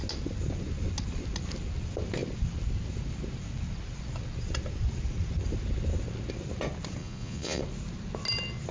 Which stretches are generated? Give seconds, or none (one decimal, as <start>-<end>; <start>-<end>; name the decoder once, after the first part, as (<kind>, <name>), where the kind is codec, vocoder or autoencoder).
7.0-7.6 (vocoder, Vocos)